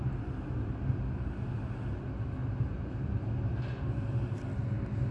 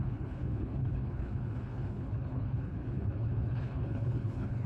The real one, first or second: first